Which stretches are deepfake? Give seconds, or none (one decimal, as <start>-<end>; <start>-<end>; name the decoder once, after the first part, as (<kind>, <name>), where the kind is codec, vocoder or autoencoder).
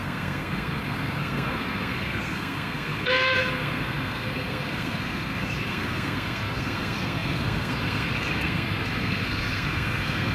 0.0-10.3 (codec, SNAC)